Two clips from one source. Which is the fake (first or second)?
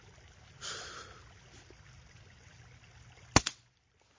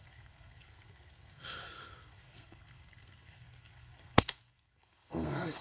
second